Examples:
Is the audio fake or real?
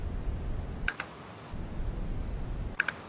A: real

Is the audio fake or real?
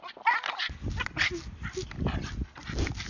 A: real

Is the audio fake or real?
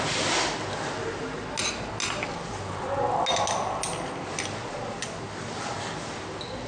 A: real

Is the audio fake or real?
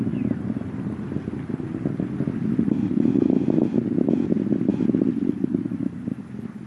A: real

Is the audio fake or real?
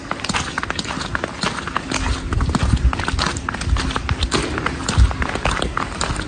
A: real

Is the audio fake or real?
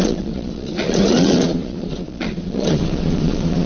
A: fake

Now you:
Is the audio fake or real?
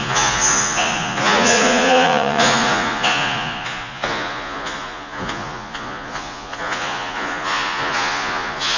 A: fake